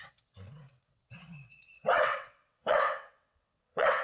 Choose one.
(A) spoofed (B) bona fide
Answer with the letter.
A